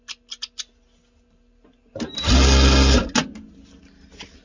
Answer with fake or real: real